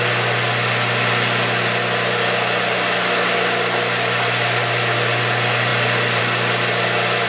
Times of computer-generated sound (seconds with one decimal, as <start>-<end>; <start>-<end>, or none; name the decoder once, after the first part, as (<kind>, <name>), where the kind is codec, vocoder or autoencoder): none